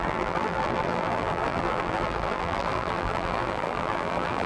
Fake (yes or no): yes